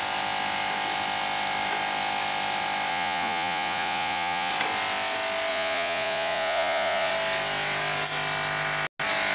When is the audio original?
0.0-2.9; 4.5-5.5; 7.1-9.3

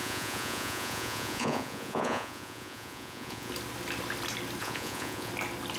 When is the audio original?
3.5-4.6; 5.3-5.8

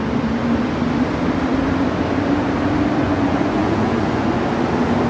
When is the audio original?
0.0-3.0; 4.4-5.1

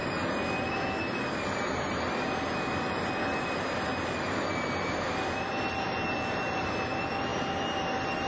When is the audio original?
0.0-8.3

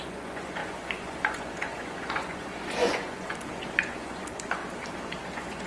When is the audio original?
4.6-5.3